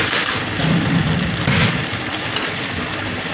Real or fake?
real